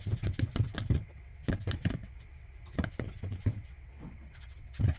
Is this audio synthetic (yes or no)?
yes